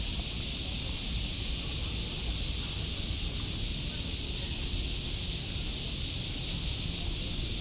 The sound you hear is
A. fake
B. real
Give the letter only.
B